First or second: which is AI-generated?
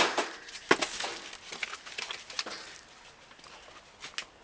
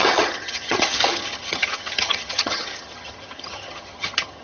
second